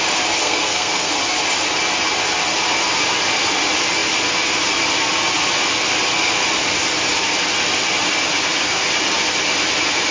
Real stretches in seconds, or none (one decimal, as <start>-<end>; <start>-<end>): 0.0-0.4; 1.1-10.1